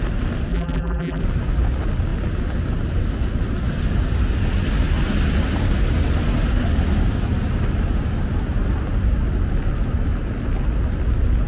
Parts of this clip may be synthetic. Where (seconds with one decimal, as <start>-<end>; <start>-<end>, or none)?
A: 0.5-1.2